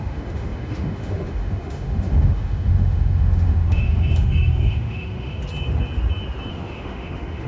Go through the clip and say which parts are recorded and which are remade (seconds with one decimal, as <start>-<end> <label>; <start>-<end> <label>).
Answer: 0.0-5.4 remade; 5.4-6.5 recorded; 6.5-7.5 remade